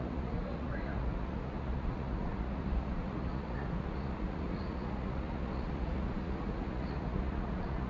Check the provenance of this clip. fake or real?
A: fake